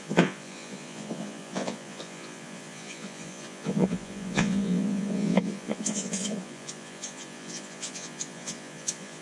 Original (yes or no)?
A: no